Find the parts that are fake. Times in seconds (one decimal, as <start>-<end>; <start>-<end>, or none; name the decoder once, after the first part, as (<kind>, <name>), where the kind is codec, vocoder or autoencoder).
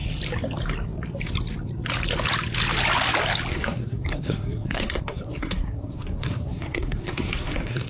3.5-7.9 (codec, SNAC)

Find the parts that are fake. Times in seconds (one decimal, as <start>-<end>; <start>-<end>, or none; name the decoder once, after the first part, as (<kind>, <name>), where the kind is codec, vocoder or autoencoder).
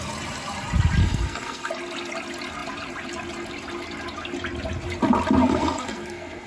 1.0-1.7 (codec, SNAC); 5.4-6.5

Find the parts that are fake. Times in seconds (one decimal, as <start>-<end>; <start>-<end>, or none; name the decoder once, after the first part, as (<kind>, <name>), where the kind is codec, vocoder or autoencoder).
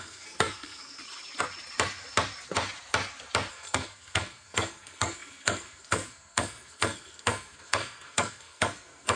0.0-1.0 (codec, SNAC); 3.5-9.2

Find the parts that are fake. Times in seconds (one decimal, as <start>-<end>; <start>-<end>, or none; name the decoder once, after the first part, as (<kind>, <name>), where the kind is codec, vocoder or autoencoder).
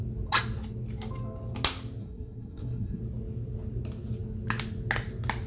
2.0-3.0 (codec, SNAC)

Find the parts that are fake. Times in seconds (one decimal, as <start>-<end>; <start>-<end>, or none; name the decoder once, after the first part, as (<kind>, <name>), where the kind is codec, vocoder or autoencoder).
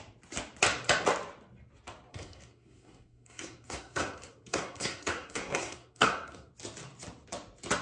2.1-6.5 (codec, SNAC)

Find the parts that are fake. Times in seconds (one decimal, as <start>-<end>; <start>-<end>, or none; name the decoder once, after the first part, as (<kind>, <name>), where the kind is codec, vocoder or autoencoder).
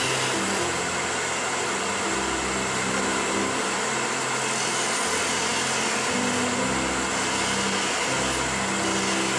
none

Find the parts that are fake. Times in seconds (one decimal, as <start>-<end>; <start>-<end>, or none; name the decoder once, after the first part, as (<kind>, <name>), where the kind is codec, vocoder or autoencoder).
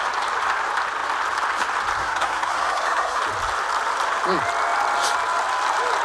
2.0-3.2 (codec, SNAC)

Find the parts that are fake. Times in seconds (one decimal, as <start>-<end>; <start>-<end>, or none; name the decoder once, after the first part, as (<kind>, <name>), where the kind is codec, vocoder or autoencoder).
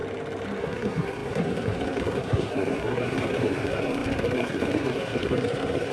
0.6-5.9 (codec, SNAC)